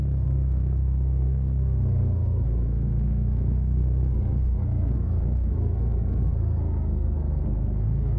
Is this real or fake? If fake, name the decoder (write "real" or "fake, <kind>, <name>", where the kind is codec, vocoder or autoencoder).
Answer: fake, codec, SNAC